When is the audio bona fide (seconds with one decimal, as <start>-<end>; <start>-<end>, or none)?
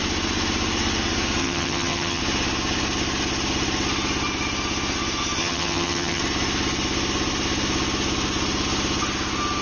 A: 0.0-1.4; 2.2-5.4; 6.2-9.6